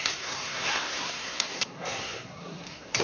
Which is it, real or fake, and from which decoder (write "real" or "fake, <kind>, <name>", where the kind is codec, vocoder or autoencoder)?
fake, codec, SNAC